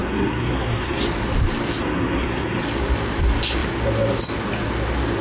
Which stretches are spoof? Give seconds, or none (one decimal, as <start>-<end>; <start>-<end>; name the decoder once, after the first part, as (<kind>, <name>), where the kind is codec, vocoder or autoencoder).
0.0-1.0 (codec, SNAC); 1.8-2.6